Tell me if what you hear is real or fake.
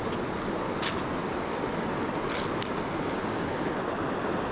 real